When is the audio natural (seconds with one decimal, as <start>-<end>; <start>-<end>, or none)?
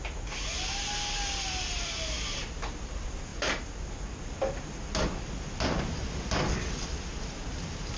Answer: 0.0-8.0